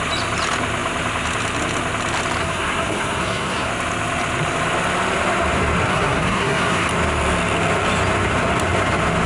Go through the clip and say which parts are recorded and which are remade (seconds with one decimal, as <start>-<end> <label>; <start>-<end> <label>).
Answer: 0.0-2.4 recorded; 2.4-3.7 remade; 3.7-5.9 recorded; 5.9-6.9 remade; 6.9-9.3 recorded